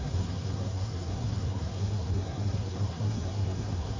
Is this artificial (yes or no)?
yes